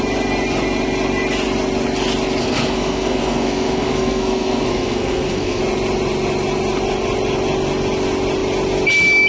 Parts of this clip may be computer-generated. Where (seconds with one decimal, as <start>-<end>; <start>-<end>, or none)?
2.4-5.6